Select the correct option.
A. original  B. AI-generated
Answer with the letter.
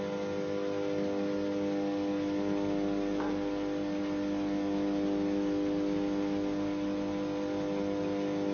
A